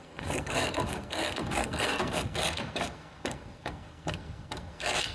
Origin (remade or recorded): remade